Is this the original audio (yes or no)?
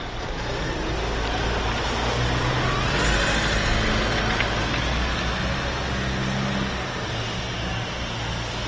yes